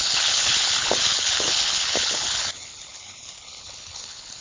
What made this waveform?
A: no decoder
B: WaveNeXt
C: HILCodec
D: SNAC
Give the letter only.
C